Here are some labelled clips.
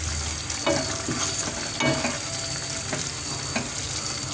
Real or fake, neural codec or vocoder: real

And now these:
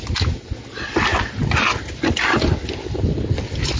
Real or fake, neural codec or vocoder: real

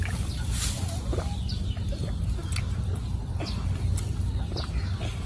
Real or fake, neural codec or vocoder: real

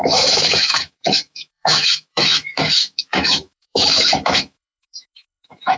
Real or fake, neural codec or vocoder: fake, autoencoder, DAC-VAE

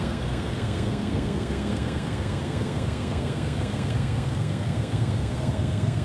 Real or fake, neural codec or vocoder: fake, codec, SNAC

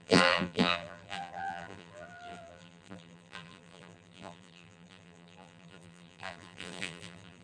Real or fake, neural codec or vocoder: fake, vocoder, BigVGAN v2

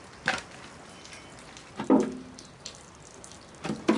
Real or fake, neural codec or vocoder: real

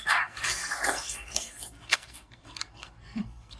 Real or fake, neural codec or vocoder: fake, codec, SNAC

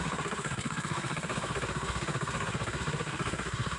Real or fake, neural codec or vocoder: fake, codec, SNAC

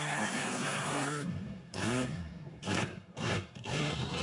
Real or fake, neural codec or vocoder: fake, codec, SNAC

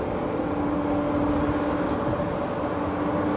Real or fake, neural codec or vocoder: real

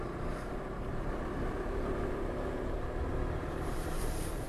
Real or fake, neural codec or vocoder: fake, vocoder, BigVGAN v2